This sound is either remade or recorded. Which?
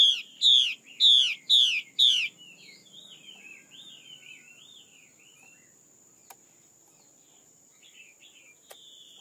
recorded